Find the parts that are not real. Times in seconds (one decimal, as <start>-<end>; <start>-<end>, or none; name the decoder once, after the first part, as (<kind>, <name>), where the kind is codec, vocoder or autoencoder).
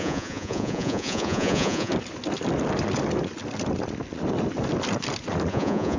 0.0-1.9 (vocoder, Vocos); 5.5-6.0